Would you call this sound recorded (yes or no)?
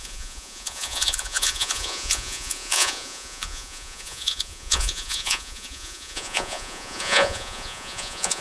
no